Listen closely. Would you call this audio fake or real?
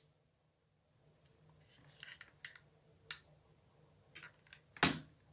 real